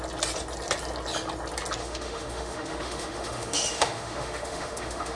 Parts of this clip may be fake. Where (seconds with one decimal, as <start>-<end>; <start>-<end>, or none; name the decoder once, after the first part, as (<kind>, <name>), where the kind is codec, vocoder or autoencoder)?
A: 1.8-5.2 (autoencoder, DAC-VAE)